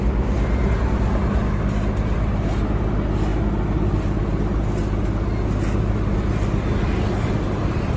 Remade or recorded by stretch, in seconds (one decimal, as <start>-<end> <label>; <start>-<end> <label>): 0.0-8.0 recorded